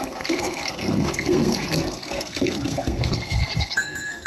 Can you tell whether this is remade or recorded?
remade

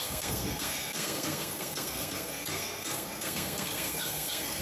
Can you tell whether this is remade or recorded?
remade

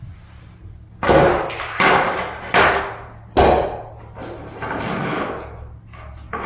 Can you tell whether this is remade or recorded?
recorded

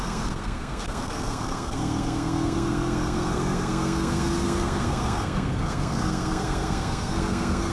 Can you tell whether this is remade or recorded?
remade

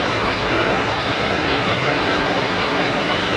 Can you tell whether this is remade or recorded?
remade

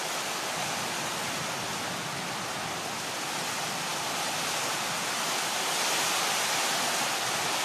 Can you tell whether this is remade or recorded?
recorded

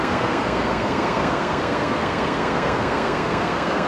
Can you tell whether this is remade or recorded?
remade